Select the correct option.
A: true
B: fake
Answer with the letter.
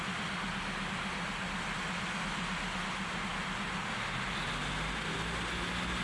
A